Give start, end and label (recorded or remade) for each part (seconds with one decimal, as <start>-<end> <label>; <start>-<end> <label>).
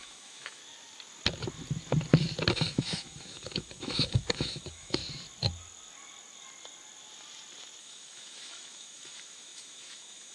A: 0.0-0.6 remade; 0.6-2.5 recorded; 2.5-5.0 remade; 5.0-7.8 recorded; 7.8-10.3 remade